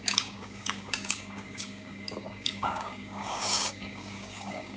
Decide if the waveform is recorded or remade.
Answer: remade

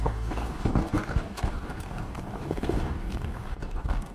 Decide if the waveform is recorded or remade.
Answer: remade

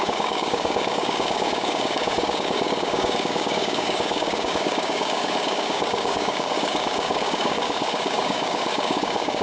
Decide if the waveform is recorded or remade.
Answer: remade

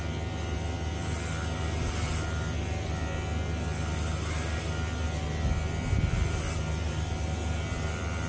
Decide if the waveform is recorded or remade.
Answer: recorded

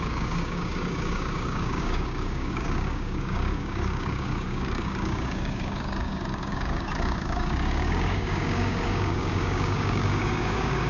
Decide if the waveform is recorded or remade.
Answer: remade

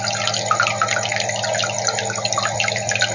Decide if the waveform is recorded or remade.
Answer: recorded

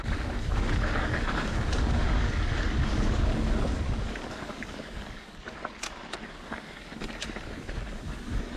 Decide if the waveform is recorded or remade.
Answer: remade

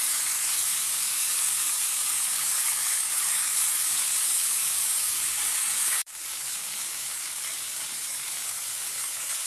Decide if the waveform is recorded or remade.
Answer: remade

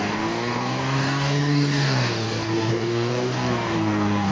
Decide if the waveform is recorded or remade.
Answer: remade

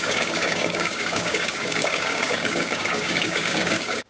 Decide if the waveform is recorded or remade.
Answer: remade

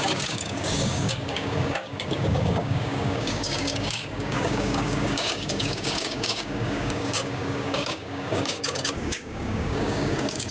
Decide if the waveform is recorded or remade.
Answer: remade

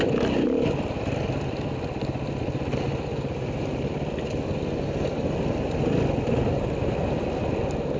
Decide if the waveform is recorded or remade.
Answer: recorded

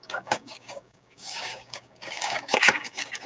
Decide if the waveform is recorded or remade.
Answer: remade